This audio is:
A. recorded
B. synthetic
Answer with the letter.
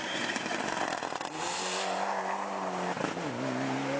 A